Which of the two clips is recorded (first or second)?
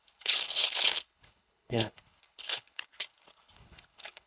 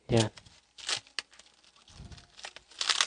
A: second